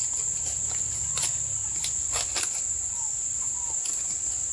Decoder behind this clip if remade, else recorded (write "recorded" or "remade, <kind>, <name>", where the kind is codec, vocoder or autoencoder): recorded